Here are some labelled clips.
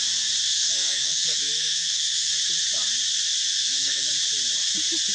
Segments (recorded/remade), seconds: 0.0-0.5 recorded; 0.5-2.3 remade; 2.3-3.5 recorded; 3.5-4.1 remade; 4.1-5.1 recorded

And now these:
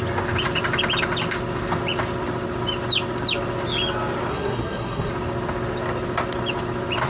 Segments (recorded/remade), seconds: 0.0-4.3 recorded; 4.3-5.1 remade; 5.1-7.1 recorded

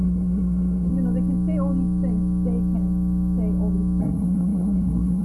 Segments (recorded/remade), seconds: 0.0-0.9 remade; 0.9-4.0 recorded; 4.0-5.2 remade

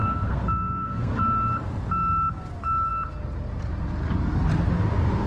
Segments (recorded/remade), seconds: 0.0-1.1 remade; 1.1-5.3 recorded